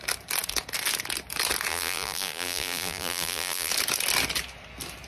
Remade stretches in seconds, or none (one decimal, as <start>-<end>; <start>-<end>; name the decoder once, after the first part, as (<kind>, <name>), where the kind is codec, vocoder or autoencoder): 1.7-3.7 (vocoder, BigVGAN v2)